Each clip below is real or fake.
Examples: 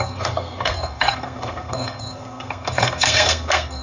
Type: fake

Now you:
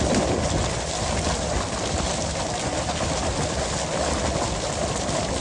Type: real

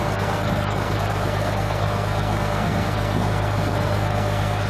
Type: fake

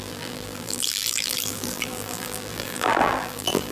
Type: fake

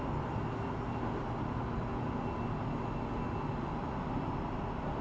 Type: real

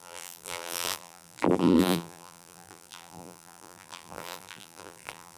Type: fake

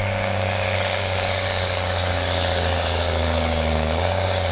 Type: fake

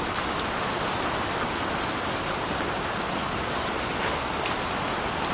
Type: real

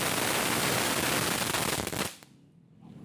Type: real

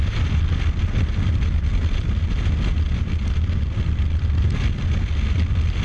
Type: real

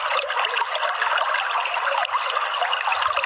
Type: real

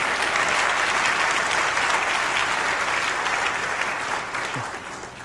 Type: real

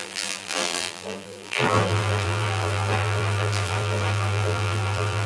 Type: fake